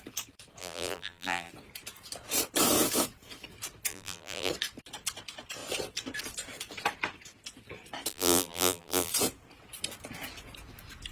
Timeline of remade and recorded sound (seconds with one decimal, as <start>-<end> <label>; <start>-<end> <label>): 0.0-0.6 recorded; 0.6-1.5 remade; 1.5-3.9 recorded; 3.9-4.5 remade; 4.5-8.1 recorded; 8.1-9.1 remade; 9.1-11.1 recorded